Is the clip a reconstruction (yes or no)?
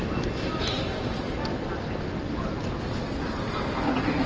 no